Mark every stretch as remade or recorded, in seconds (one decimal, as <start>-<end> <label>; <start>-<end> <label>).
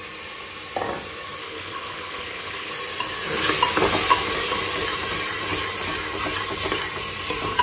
0.0-1.4 recorded; 1.4-2.7 remade; 2.7-7.6 recorded